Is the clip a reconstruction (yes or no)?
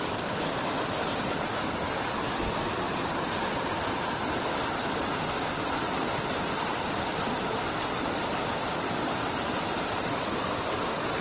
no